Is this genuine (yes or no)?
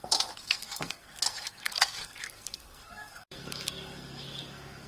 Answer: no